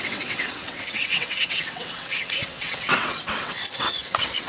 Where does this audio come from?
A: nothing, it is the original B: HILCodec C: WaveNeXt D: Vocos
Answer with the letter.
C